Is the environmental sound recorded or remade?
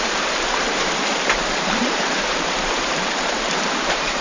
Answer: remade